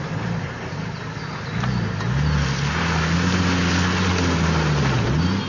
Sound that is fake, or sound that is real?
real